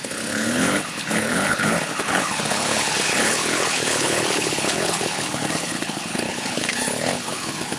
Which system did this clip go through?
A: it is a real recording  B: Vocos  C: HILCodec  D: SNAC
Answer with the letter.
C